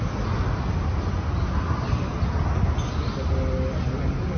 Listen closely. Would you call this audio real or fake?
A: real